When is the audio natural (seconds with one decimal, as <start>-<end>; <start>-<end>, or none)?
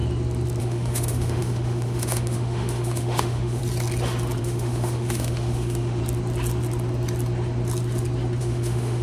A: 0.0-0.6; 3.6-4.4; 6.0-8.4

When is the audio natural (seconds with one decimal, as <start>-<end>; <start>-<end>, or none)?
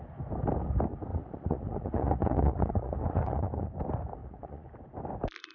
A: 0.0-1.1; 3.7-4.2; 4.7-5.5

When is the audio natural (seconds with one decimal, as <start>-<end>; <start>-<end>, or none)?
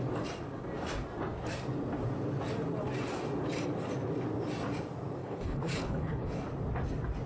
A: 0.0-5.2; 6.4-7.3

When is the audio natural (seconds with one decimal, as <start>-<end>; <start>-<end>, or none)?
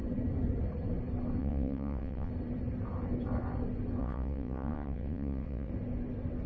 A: 0.0-1.4; 2.3-4.0; 5.7-6.5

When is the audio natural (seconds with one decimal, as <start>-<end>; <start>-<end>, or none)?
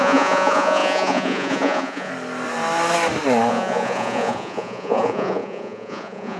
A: 2.1-3.5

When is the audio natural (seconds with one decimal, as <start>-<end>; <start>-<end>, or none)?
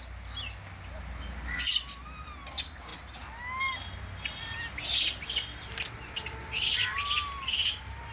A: 0.0-8.1